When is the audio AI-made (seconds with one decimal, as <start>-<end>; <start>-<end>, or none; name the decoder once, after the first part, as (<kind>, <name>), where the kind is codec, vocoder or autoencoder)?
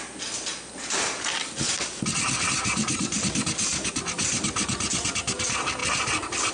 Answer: none